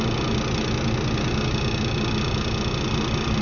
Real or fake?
real